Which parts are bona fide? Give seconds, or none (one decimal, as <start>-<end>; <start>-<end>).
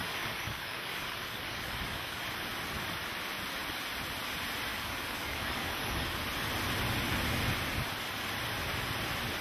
2.2-4.7; 6.2-9.4